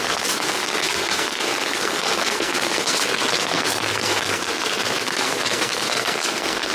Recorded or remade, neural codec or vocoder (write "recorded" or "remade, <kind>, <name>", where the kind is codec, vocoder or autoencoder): remade, codec, SNAC